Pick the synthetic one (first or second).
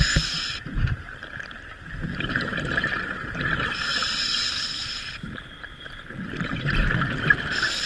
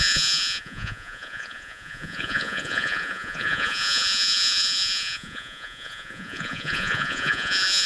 second